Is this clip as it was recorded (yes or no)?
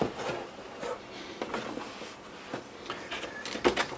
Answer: yes